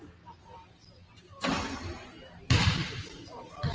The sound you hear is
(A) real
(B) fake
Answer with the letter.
A